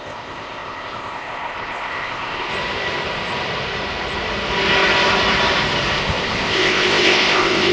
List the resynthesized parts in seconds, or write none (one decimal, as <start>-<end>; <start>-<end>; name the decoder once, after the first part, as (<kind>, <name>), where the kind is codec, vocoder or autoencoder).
0.0-2.5 (codec, ZipCodec); 6.0-7.7